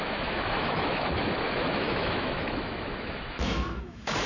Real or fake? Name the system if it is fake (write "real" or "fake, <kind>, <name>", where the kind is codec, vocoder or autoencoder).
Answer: fake, autoencoder, DAC-VAE